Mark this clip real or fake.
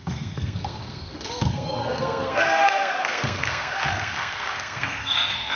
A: fake